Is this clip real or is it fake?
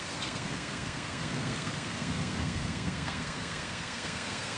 fake